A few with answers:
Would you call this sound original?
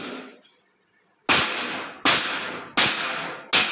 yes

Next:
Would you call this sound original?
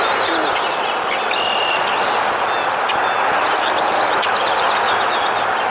yes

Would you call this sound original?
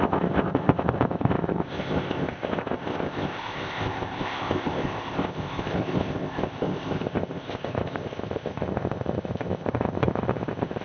no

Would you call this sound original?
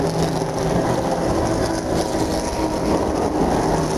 yes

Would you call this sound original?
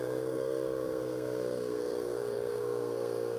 no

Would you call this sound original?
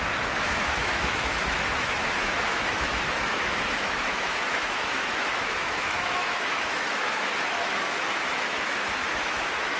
no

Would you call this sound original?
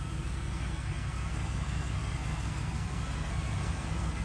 no